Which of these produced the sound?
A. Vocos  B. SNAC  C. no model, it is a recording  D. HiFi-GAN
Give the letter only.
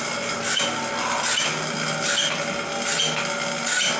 C